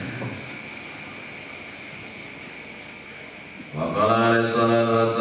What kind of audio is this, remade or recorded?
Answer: recorded